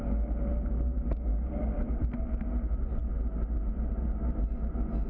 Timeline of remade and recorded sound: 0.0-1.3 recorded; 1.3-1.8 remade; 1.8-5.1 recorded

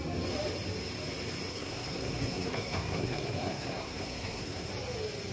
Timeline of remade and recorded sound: 0.0-1.5 recorded; 1.5-4.7 remade; 4.7-5.3 recorded